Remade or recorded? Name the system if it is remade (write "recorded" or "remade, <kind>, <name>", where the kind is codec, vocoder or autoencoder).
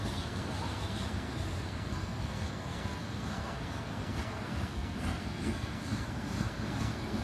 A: remade, codec, SNAC